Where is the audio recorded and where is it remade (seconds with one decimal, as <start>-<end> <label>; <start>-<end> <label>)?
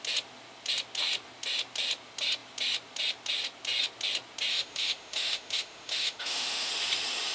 0.0-4.5 recorded; 4.5-6.7 remade; 6.7-7.3 recorded